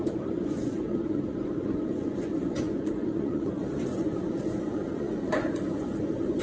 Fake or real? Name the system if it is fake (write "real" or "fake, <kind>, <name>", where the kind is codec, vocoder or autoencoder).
fake, vocoder, Vocos